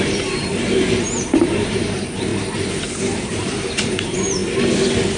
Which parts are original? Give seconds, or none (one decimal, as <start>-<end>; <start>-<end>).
2.3-3.0; 4.4-5.2